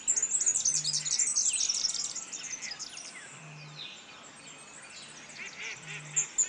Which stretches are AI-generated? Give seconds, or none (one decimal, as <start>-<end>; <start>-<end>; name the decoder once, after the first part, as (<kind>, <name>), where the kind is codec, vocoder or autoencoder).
none